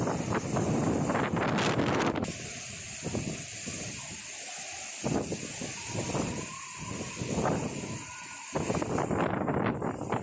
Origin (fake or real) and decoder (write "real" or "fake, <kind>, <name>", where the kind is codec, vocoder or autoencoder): real